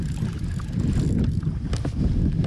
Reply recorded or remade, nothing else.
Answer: recorded